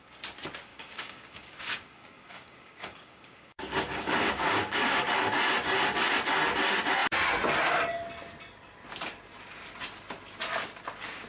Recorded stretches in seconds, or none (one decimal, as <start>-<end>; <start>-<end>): 0.0-0.7; 5.1-11.3